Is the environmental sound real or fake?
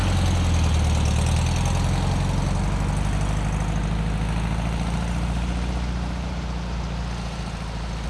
real